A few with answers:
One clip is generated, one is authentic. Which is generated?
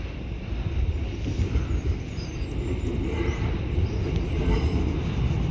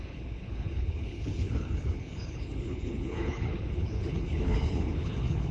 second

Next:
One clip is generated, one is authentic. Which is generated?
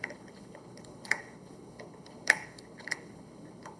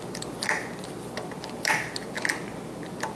first